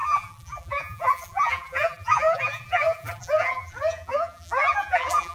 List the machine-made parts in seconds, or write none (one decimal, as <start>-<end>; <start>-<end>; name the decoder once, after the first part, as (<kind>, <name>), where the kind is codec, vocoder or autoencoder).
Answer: 0.0-5.3 (vocoder, BigVGAN v2)